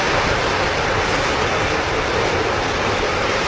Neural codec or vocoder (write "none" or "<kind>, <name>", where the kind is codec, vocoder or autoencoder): vocoder, BigVGAN v2